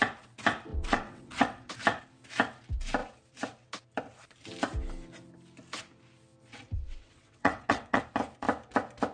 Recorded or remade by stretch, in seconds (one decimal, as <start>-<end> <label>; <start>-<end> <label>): 0.0-0.7 recorded; 0.7-1.7 remade; 1.7-6.5 recorded; 6.5-8.0 remade; 8.0-9.1 recorded